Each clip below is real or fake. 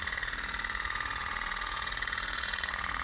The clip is fake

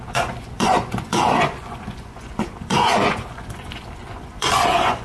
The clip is fake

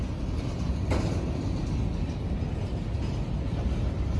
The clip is real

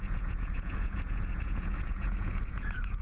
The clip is fake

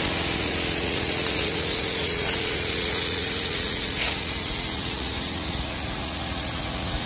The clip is fake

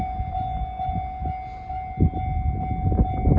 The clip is real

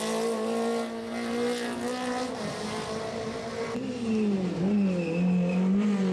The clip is real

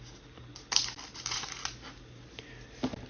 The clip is real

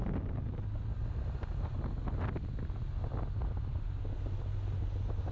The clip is real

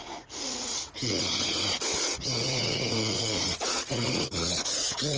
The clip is fake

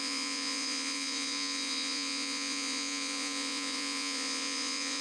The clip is fake